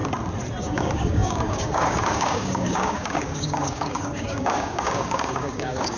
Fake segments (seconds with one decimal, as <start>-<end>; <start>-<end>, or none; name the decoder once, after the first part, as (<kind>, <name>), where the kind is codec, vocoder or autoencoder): 0.6-6.0 (codec, DAC)

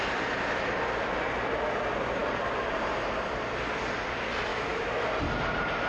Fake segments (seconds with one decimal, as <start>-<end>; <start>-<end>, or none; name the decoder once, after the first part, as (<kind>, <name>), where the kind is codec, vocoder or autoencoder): 4.5-5.0 (autoencoder, DAC-VAE)

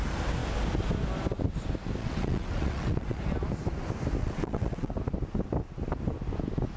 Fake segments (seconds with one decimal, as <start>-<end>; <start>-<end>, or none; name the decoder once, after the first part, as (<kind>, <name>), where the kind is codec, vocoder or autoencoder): 2.0-3.2 (vocoder, WaveNeXt); 4.2-4.9

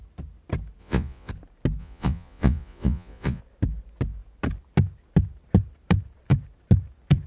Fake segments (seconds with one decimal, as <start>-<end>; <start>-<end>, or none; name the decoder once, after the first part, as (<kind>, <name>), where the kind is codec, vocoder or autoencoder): 0.8-1.3 (vocoder, Vocos); 1.8-3.4

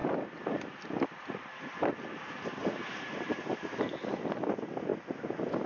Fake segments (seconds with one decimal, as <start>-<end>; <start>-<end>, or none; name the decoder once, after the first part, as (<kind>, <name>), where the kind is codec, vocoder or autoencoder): 0.0-2.6 (vocoder, BigVGAN v2); 3.3-4.9

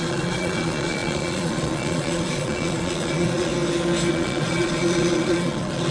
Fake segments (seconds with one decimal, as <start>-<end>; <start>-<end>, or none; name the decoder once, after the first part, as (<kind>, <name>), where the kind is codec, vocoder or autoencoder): 0.0-3.5 (vocoder, Vocos); 4.1-5.9